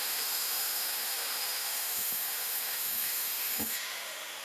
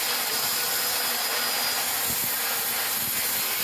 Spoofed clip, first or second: first